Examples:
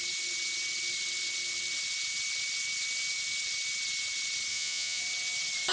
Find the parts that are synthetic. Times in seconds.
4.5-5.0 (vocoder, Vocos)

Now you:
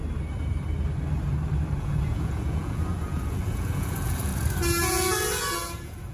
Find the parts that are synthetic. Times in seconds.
1.8-4.3 (vocoder, Vocos); 4.9-6.1

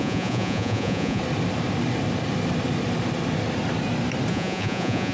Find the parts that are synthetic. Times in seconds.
0.0-1.2 (vocoder, Vocos); 4.3-5.1

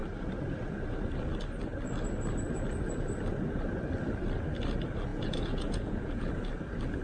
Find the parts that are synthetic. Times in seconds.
5.1-6.3 (vocoder, Vocos)

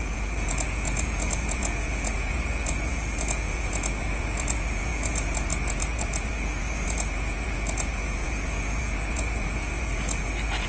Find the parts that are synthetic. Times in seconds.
0.0-10.7 (vocoder, Vocos)

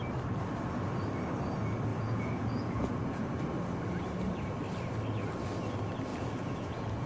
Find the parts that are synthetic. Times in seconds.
1.9-3.4 (vocoder, Vocos); 6.1-7.1